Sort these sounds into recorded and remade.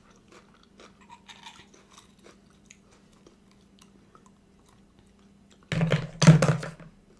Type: recorded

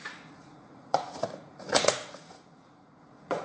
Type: remade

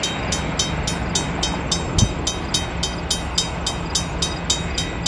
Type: recorded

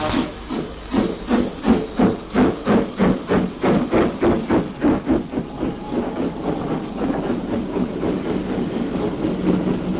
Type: recorded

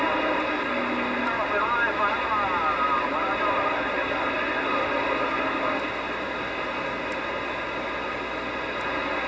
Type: recorded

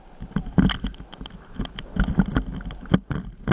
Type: recorded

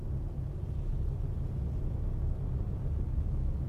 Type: recorded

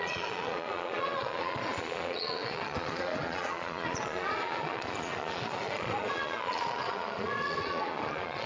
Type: remade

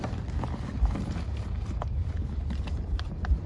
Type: recorded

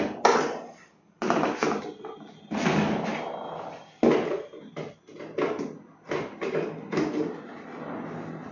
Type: recorded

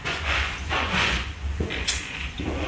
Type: remade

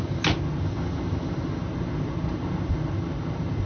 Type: recorded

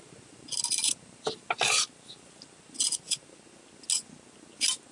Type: recorded